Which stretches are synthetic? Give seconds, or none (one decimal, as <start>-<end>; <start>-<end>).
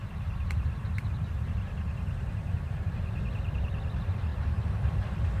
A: 0.0-5.4